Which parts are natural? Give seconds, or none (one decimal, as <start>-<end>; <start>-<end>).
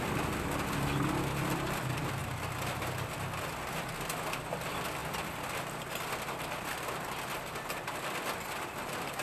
0.0-9.2